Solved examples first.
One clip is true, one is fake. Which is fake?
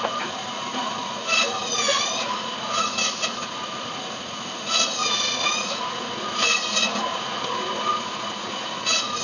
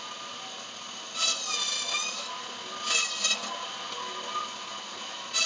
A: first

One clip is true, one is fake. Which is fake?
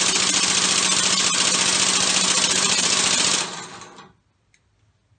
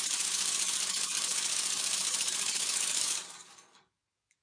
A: second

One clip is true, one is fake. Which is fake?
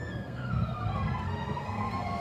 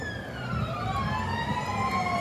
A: first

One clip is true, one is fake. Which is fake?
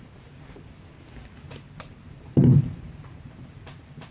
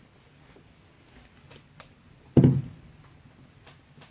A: first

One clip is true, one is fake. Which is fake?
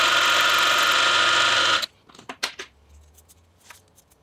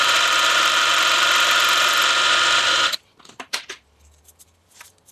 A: second